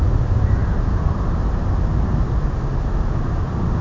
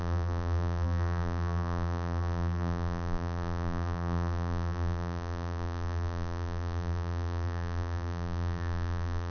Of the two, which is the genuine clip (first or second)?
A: first